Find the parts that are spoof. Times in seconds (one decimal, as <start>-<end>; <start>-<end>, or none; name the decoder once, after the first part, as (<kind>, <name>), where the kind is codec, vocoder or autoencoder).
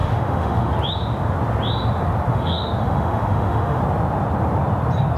0.0-0.7 (autoencoder, DAC-VAE); 2.3-3.8